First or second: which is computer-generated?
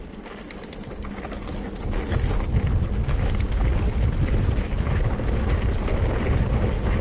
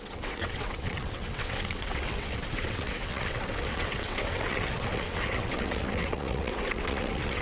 second